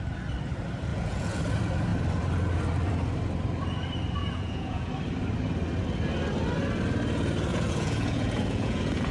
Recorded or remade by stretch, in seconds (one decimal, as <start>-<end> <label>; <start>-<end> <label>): 0.0-0.9 recorded; 0.9-1.4 remade; 1.4-4.2 recorded; 4.2-4.9 remade; 4.9-7.5 recorded; 7.5-9.1 remade